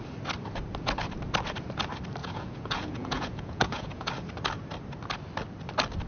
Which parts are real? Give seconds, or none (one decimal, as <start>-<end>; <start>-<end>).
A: 0.0-2.2; 4.1-6.1